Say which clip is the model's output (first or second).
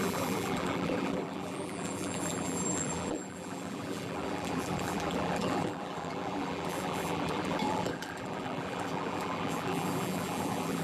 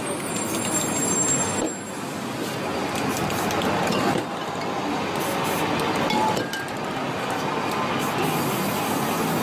first